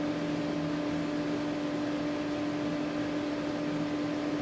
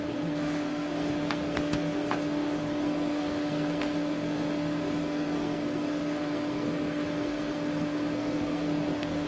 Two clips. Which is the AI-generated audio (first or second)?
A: second